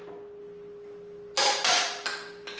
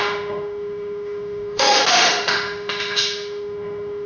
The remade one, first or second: second